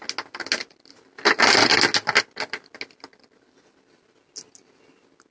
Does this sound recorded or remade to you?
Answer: recorded